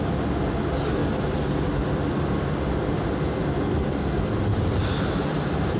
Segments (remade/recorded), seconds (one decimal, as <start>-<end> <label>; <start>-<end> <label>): 0.0-3.7 recorded; 3.7-4.4 remade; 4.4-5.8 recorded